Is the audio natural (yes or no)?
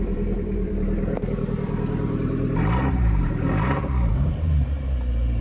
no